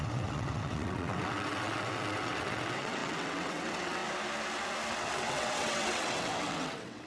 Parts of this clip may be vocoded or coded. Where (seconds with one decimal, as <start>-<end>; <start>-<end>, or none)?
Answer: 0.0-4.0; 4.9-7.1